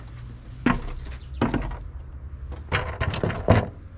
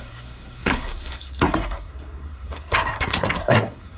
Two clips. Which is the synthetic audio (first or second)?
second